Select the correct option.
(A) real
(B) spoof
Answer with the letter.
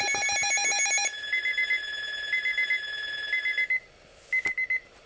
A